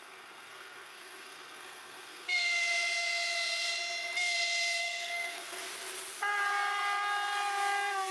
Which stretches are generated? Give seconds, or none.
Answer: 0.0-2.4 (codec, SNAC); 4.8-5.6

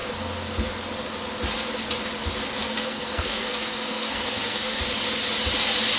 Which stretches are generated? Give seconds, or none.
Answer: 2.6-4.8 (codec, SNAC)

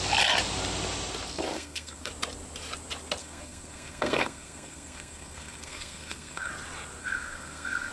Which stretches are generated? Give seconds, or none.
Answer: 1.5-2.1 (codec, SNAC); 3.2-6.5; 7.0-7.9

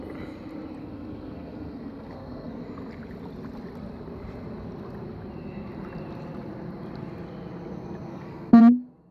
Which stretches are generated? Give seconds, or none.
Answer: 0.8-2.6 (codec, SNAC); 8.1-8.6

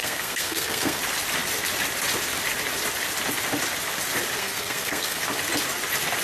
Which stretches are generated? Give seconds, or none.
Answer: 0.0-1.0 (codec, SNAC); 4.4-5.2

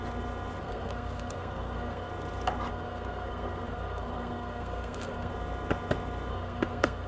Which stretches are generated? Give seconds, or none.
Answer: 0.6-2.1 (codec, SNAC); 2.7-5.3; 6.3-7.1